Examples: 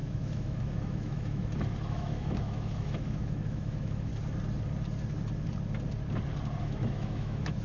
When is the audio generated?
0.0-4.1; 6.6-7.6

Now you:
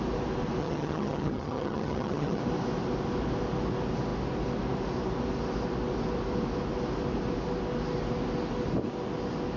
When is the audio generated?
0.6-2.4

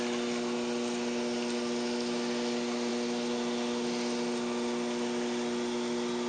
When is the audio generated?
none

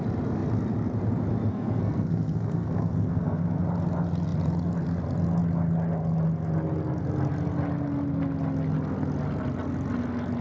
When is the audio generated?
1.5-3.6

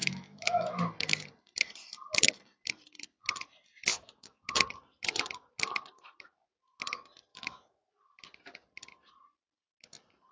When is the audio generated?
0.0-0.8; 3.9-4.4; 7.3-7.9

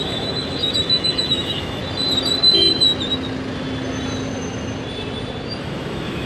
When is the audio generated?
0.0-1.8; 5.6-6.3

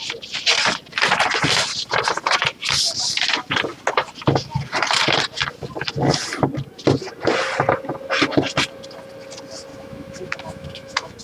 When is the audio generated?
9.7-11.2

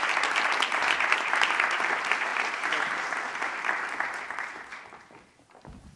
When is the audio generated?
0.8-1.7; 2.3-3.5